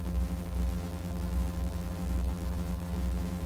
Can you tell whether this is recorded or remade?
remade